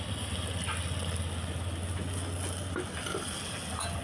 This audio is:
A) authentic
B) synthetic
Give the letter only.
A